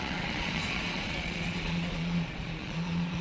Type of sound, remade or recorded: remade